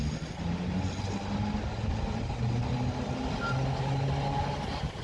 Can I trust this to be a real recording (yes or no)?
yes